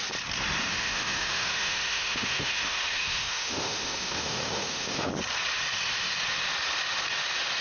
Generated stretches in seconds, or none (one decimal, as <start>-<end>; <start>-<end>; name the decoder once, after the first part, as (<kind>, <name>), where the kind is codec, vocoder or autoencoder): 0.7-5.1 (autoencoder, DAC-VAE)